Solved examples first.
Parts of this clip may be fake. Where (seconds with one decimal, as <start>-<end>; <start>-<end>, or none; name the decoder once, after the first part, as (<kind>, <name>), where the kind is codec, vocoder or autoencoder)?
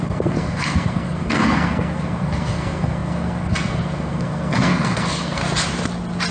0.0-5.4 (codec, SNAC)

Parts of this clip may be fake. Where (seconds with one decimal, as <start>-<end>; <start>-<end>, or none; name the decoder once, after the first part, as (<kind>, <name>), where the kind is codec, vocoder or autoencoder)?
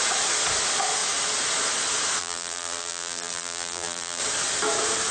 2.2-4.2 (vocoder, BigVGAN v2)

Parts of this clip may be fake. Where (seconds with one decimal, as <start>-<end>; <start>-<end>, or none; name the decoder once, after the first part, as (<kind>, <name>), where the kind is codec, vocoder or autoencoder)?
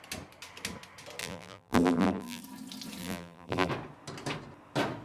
1.2-2.4 (vocoder, BigVGAN v2); 3.0-3.7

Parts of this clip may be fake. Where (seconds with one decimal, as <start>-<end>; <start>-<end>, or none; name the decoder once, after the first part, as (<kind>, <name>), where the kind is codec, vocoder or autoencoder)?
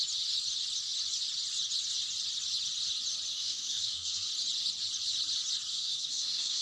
3.3-4.3 (codec, SNAC); 5.7-6.6